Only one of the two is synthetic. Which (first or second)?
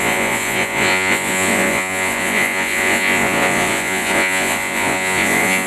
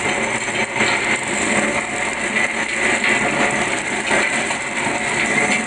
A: first